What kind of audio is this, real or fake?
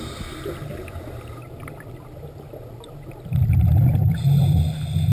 real